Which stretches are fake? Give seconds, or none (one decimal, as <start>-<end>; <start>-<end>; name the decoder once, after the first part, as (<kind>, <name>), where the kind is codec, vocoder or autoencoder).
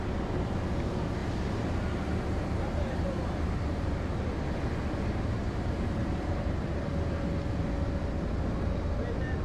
1.2-4.2 (vocoder, BigVGAN v2); 5.4-6.9